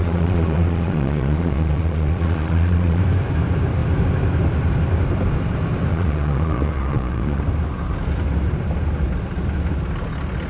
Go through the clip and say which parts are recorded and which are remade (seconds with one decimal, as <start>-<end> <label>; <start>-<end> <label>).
0.0-3.0 remade; 3.0-5.9 recorded; 5.9-7.4 remade; 7.4-10.5 recorded